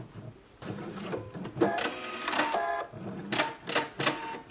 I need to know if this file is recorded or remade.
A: recorded